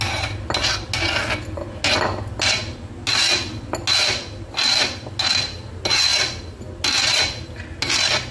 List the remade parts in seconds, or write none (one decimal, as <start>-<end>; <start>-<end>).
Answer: none